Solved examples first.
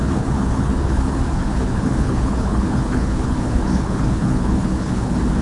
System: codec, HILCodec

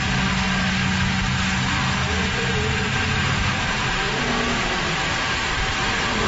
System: none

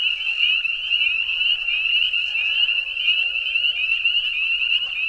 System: none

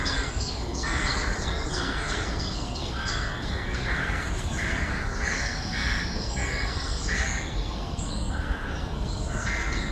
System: codec, SNAC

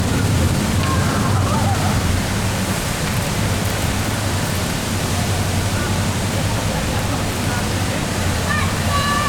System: vocoder, BigVGAN v2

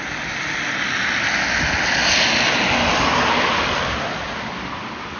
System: none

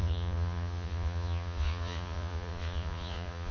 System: vocoder, Vocos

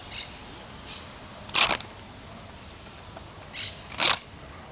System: none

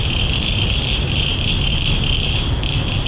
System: none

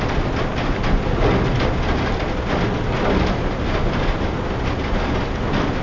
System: none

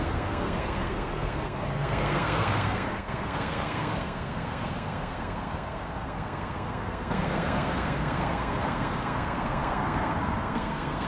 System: codec, SNAC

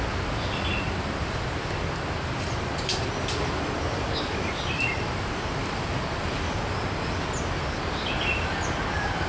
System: none